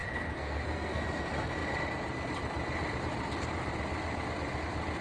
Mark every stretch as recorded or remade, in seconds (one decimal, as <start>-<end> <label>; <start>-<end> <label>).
0.0-1.0 remade; 1.0-5.0 recorded